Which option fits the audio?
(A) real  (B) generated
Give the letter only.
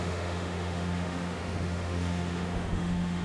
B